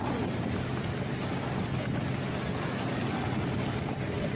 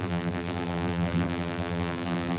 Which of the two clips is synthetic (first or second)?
second